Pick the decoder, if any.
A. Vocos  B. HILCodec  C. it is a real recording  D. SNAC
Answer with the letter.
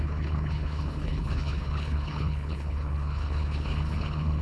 B